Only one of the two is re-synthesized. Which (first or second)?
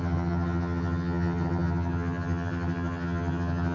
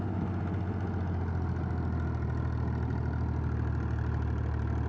first